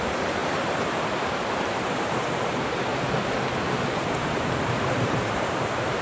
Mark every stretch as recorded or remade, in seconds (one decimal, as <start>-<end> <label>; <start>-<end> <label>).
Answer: 0.0-2.9 remade; 2.9-3.7 recorded; 3.7-6.0 remade